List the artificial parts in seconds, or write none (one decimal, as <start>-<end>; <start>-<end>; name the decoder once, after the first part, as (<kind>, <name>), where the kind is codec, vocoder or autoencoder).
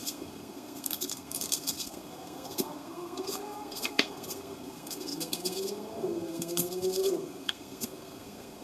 0.0-8.6 (codec, SNAC)